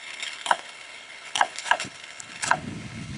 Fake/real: fake